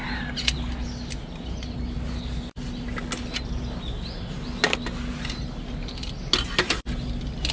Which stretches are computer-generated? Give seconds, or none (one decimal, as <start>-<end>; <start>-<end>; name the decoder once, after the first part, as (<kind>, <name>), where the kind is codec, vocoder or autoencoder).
none

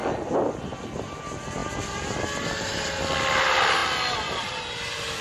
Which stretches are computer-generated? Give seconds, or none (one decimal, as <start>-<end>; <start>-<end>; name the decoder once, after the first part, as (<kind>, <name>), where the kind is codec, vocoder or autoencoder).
none

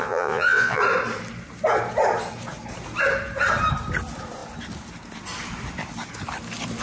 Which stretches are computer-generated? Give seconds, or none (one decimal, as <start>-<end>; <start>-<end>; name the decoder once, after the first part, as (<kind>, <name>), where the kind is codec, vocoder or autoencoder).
0.0-0.8 (vocoder, Vocos)

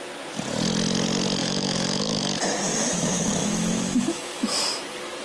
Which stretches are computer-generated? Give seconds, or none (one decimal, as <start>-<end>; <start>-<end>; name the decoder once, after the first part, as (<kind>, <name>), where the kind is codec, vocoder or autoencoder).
1.4-2.4 (autoencoder, DAC-VAE); 2.9-4.8

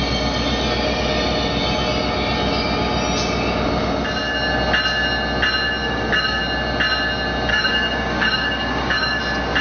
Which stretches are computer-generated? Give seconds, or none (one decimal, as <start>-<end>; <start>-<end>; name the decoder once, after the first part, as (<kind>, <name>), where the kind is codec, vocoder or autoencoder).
5.8-6.4 (codec, DAC); 7.5-9.2

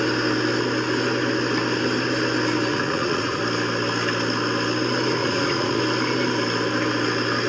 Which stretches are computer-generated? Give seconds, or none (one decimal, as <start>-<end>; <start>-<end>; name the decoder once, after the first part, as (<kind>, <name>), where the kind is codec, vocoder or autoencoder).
2.7-3.4 (vocoder, Vocos); 5.2-5.8

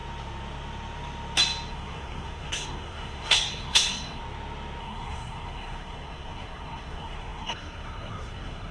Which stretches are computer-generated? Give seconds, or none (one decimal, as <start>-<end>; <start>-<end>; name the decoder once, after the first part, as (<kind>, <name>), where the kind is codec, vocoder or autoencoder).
1.7-4.2 (codec, SNAC); 4.8-8.7

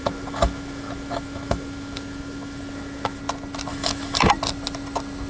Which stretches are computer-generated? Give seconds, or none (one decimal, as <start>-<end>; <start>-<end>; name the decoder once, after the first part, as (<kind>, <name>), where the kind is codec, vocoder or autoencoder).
0.0-3.2 (autoencoder, DAC-VAE); 3.7-4.3